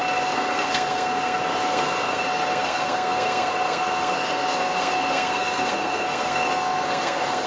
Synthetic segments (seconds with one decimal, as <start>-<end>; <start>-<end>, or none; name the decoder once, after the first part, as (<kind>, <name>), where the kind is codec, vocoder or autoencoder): 0.0-7.5 (codec, SNAC)